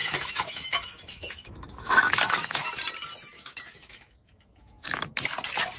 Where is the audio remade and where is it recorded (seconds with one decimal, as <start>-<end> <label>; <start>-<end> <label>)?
0.0-2.7 remade; 2.7-3.3 recorded; 3.3-5.1 remade; 5.1-5.8 recorded